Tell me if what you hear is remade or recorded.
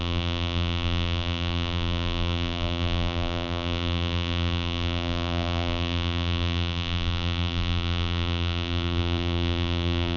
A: remade